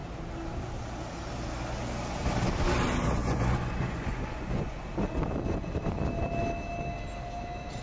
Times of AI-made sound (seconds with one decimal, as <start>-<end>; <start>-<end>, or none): 3.2-4.8